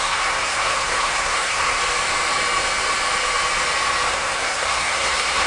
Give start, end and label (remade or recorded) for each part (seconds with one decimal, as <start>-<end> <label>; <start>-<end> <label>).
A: 0.0-1.8 remade; 1.8-4.1 recorded; 4.1-5.5 remade